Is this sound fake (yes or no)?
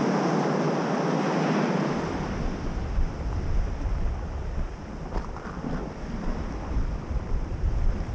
no